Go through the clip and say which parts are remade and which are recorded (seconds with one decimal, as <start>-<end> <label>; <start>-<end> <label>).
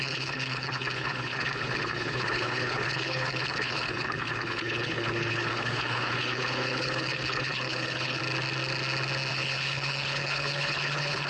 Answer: 0.0-8.2 remade; 8.2-9.3 recorded; 9.3-11.3 remade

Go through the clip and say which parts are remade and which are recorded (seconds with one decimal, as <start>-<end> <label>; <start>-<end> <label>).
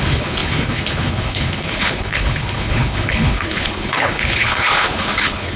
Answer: 0.0-5.6 remade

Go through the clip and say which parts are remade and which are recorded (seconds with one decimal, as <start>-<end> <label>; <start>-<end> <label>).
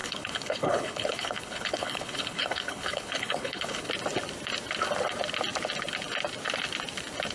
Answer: 0.0-3.9 remade; 3.9-7.3 recorded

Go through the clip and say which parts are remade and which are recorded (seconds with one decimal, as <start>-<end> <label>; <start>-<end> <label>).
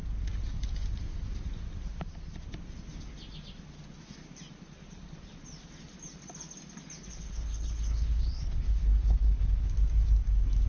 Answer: 0.0-7.1 recorded; 7.1-9.7 remade; 9.7-10.7 recorded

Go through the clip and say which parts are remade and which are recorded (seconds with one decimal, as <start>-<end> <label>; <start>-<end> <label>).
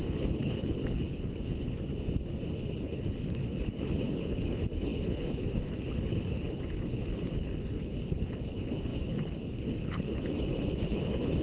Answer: 0.0-1.9 remade; 1.9-2.5 recorded; 2.5-11.4 remade